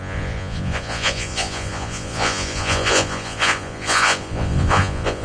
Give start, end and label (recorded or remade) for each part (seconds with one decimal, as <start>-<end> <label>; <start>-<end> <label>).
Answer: 0.0-5.2 remade